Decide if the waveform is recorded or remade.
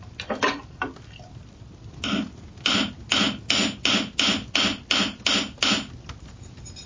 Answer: recorded